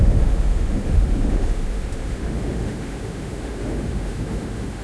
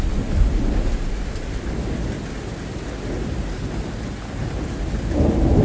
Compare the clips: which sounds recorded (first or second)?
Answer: second